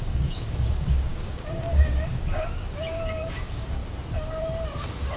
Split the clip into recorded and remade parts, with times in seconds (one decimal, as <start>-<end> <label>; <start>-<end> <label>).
0.0-3.8 remade; 3.8-5.2 recorded